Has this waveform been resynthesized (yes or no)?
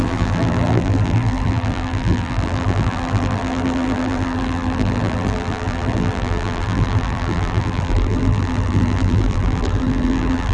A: yes